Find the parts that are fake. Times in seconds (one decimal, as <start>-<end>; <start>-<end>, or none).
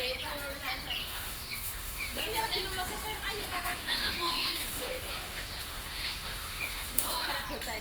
1.0-2.2; 3.4-7.3